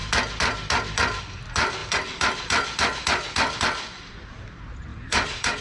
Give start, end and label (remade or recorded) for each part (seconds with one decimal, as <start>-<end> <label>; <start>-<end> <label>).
0.0-4.9 recorded; 4.9-5.6 remade